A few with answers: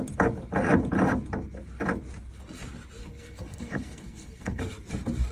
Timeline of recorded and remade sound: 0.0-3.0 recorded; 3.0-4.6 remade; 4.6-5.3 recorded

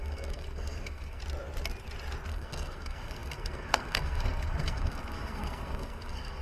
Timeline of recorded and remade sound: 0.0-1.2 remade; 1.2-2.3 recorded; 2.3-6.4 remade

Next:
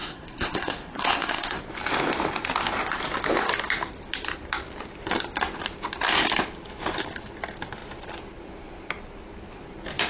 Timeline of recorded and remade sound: 0.0-1.6 remade; 1.6-10.1 recorded

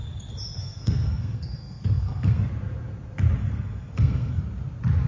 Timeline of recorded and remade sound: 0.0-0.6 recorded; 0.6-2.5 remade; 2.5-3.4 recorded; 3.4-4.4 remade; 4.4-5.1 recorded

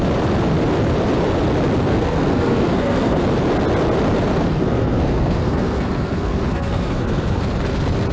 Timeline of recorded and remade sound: 0.0-1.9 recorded; 1.9-3.2 remade; 3.2-4.5 recorded; 4.5-7.4 remade; 7.4-8.1 recorded

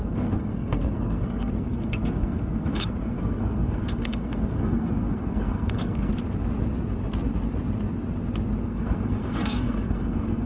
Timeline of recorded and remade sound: 0.0-6.1 remade; 6.1-8.6 recorded; 8.6-10.5 remade

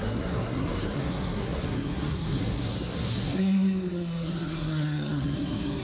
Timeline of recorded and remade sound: 0.0-5.8 remade